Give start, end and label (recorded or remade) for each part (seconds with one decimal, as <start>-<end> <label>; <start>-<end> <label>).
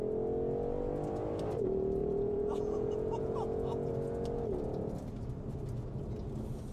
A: 0.0-2.0 recorded; 2.0-3.9 remade; 3.9-6.7 recorded